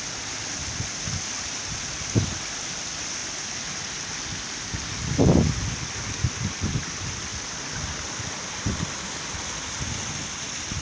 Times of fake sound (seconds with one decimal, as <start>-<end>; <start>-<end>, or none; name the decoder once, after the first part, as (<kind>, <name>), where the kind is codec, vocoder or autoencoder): none